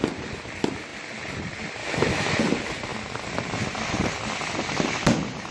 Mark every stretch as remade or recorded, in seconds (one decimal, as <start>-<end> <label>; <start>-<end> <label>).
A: 0.0-1.8 recorded; 1.8-2.4 remade; 2.4-5.5 recorded